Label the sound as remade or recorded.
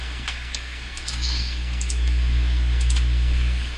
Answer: remade